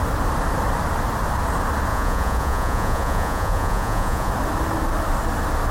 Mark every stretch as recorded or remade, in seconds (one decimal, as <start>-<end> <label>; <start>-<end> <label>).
0.0-1.9 recorded; 1.9-4.3 remade; 4.3-5.7 recorded